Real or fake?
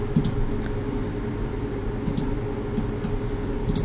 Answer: real